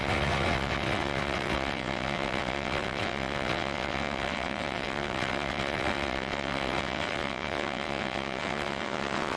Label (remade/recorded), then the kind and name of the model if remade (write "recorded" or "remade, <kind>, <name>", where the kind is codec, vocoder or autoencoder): remade, vocoder, WaveNeXt